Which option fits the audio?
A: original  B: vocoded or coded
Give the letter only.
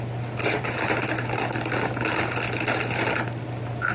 A